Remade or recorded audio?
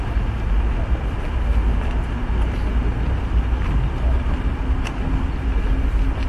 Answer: recorded